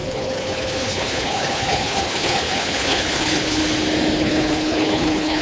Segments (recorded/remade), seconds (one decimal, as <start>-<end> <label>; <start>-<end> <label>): 0.0-3.6 remade; 3.6-4.2 recorded; 4.2-5.4 remade